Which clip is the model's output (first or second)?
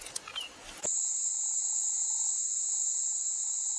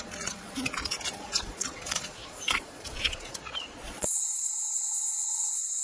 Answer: second